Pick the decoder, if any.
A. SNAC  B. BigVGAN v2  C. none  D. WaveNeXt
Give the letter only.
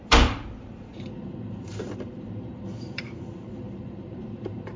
B